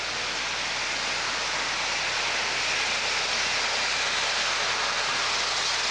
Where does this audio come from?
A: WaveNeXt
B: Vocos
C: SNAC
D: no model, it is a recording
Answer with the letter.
D